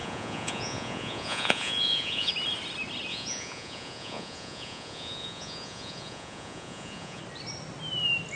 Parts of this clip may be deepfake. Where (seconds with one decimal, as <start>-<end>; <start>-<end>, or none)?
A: 0.0-2.3; 3.1-7.2